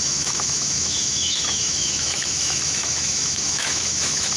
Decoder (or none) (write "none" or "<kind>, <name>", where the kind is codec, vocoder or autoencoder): autoencoder, DAC-VAE